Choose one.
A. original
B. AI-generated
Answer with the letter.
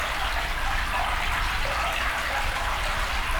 A